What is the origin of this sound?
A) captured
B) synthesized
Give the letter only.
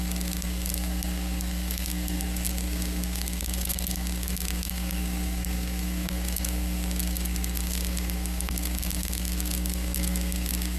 B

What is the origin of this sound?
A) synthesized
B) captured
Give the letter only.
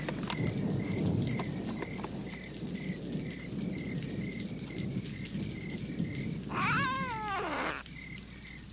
B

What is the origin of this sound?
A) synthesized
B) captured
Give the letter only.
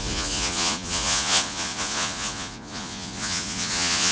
A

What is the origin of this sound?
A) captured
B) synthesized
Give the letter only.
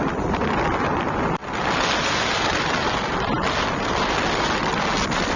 A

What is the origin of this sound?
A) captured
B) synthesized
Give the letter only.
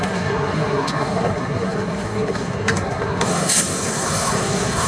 B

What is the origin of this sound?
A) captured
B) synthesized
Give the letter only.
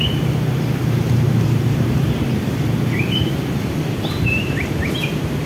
B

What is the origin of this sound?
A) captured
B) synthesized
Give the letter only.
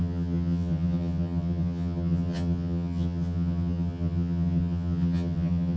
B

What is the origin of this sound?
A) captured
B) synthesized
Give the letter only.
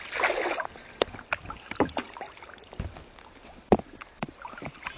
A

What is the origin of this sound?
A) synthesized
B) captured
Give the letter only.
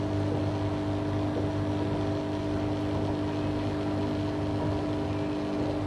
B